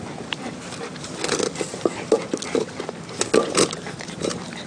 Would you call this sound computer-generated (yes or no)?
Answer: no